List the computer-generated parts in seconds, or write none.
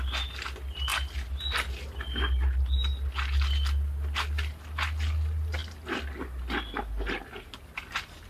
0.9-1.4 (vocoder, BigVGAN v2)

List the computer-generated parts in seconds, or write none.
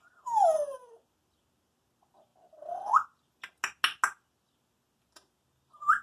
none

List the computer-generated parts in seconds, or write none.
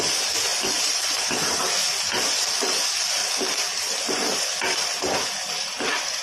0.0-6.2 (vocoder, BigVGAN v2)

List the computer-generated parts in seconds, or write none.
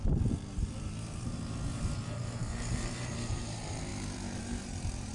0.0-5.1 (vocoder, BigVGAN v2)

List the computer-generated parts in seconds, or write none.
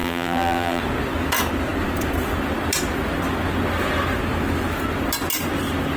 0.0-0.8 (vocoder, BigVGAN v2)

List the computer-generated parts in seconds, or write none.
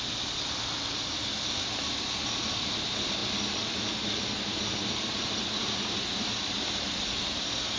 none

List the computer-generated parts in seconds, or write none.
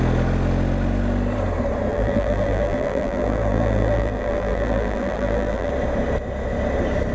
1.9-5.7 (vocoder, BigVGAN v2)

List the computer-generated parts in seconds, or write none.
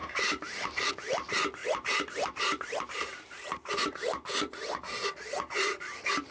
0.0-0.9 (vocoder, BigVGAN v2); 1.6-4.3